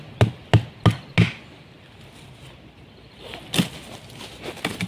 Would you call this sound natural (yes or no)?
yes